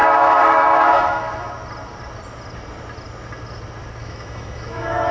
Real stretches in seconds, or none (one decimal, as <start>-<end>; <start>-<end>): 1.5-4.0